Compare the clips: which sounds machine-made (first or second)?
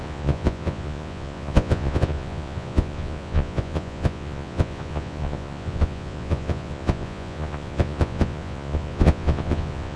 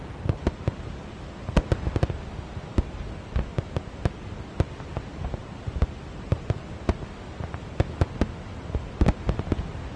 first